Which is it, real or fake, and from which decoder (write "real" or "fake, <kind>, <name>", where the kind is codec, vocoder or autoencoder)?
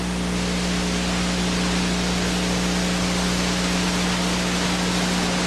real